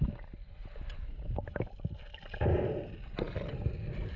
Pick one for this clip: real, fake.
real